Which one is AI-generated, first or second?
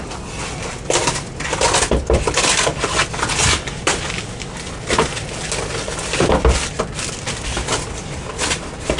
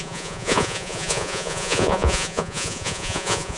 second